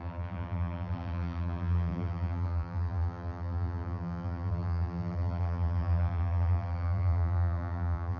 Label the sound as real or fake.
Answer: fake